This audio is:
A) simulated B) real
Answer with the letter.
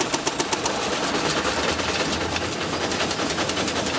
B